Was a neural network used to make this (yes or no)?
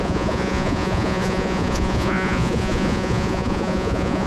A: yes